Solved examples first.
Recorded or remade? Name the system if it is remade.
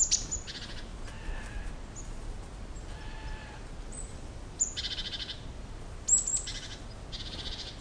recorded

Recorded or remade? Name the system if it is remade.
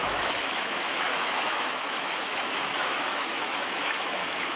remade, autoencoder, DAC-VAE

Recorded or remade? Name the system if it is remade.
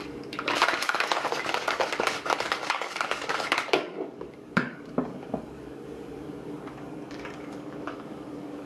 remade, codec, DAC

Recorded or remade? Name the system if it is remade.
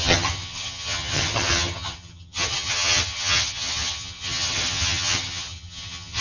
remade, vocoder, HiFi-GAN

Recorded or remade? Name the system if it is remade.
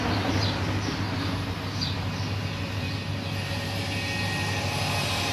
recorded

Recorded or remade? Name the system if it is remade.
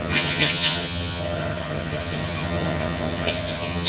remade, vocoder, HiFi-GAN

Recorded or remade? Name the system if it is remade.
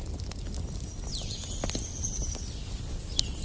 recorded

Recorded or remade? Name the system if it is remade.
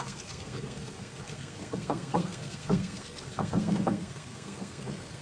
remade, codec, SNAC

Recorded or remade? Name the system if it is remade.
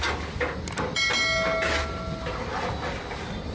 recorded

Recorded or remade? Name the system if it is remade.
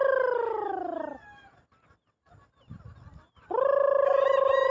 recorded